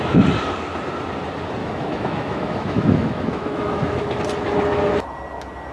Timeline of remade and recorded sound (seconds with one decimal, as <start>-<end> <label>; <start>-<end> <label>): 0.0-1.6 recorded; 1.6-4.2 remade; 4.2-5.7 recorded